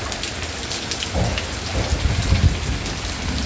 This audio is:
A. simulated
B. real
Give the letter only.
B